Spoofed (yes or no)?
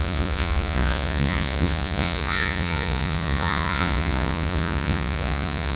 yes